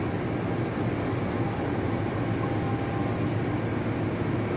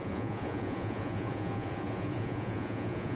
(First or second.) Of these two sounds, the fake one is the second